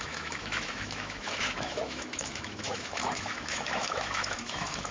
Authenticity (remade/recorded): remade